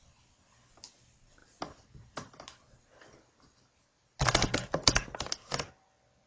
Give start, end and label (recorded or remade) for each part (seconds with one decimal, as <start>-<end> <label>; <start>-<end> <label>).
0.0-6.3 recorded

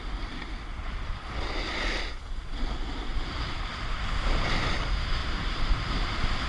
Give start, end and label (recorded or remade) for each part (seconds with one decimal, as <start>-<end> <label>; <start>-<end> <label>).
0.0-0.8 recorded; 0.8-1.6 remade; 1.6-3.1 recorded; 3.1-3.7 remade; 3.7-5.2 recorded; 5.2-6.5 remade

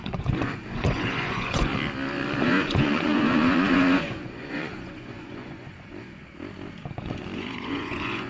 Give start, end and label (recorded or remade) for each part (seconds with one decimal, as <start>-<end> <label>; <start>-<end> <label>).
0.0-1.7 remade; 1.7-2.4 recorded; 2.4-6.2 remade; 6.2-6.8 recorded; 6.8-8.3 remade